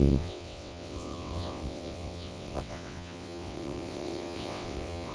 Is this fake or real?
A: fake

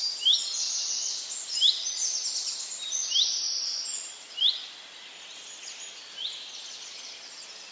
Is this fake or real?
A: real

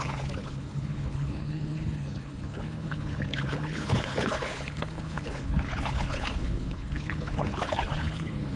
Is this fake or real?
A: fake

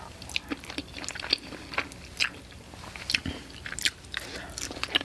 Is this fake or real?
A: real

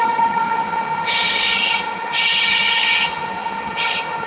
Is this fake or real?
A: fake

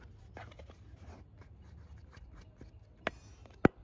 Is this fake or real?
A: real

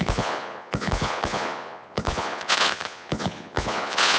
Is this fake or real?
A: fake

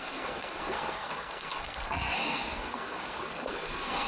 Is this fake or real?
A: fake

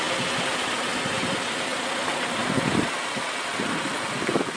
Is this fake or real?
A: real